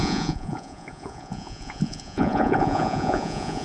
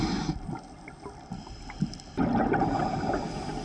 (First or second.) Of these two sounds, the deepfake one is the first